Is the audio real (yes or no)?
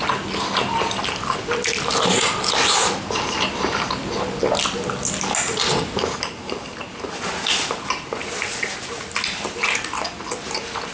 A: yes